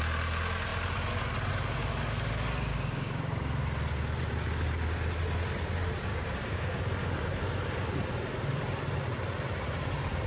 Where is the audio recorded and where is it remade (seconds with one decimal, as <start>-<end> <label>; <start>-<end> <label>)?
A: 0.0-2.7 recorded; 2.7-3.6 remade; 3.6-6.1 recorded; 6.1-6.8 remade; 6.8-10.3 recorded